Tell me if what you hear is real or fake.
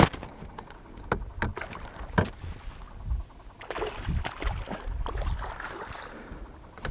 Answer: real